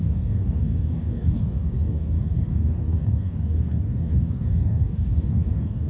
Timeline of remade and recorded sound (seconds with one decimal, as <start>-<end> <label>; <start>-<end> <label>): 0.0-5.9 remade